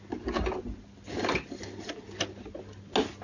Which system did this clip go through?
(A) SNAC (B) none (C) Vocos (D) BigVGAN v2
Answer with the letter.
B